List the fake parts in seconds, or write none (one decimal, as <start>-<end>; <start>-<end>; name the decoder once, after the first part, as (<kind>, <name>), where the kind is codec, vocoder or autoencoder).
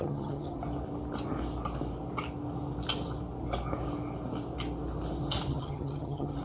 0.0-0.6 (vocoder, HiFi-GAN); 5.5-6.4